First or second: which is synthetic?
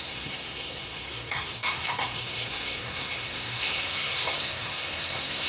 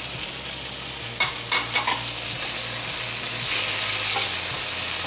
first